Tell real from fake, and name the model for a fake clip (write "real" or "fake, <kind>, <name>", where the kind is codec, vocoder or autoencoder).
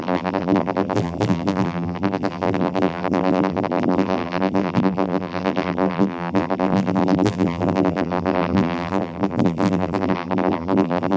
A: fake, vocoder, BigVGAN v2